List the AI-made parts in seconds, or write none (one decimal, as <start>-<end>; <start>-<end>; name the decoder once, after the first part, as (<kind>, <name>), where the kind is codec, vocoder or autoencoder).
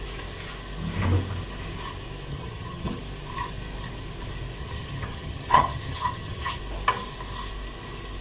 2.3-3.0 (vocoder, HiFi-GAN); 4.6-6.6